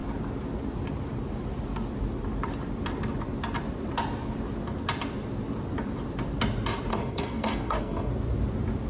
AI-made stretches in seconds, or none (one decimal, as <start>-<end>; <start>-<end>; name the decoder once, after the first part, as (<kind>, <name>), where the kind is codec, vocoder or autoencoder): 6.9-8.1 (codec, SNAC)